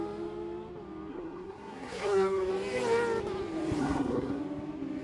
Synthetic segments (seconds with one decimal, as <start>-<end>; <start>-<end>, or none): 1.1-2.5; 3.8-4.4